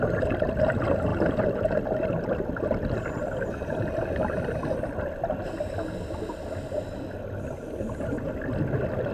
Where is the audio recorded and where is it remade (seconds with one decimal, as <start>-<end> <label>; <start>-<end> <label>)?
0.0-9.1 recorded